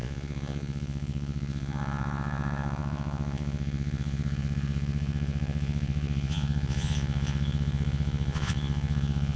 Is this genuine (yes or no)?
no